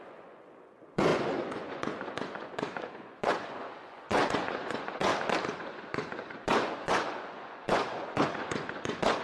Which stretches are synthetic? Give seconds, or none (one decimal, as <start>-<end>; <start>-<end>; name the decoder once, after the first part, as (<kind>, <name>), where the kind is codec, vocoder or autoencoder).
0.0-5.1 (vocoder, Vocos); 5.6-9.2